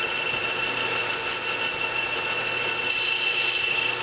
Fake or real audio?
real